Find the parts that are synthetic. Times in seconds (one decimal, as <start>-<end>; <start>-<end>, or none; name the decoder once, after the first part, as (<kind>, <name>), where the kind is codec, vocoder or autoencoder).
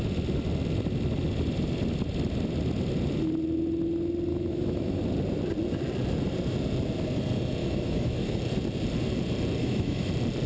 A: 4.3-5.0 (autoencoder, DAC-VAE); 7.6-8.4; 9.6-10.1